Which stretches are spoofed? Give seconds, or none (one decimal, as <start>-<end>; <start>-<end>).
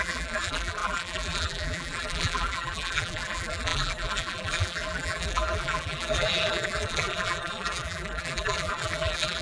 0.0-9.4